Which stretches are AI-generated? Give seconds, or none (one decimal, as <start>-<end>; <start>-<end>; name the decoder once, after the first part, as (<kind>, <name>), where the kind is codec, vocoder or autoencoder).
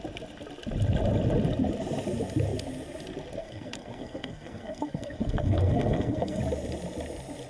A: 3.4-6.4 (codec, SNAC)